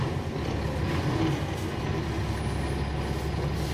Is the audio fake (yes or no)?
no